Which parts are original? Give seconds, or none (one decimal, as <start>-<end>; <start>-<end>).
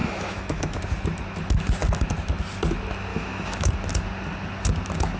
0.8-3.1; 3.7-5.2